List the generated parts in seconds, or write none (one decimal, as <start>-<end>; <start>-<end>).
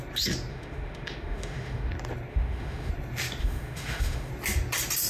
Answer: 0.5-1.9; 2.3-2.9; 3.4-4.3